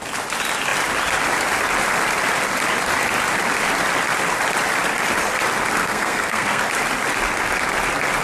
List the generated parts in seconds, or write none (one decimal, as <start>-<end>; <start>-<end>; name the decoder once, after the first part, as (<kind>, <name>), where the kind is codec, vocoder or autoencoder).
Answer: 5.8-6.6 (codec, SNAC)